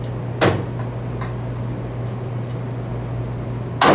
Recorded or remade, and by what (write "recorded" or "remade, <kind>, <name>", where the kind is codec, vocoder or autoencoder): recorded